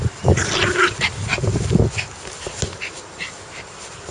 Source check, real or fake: real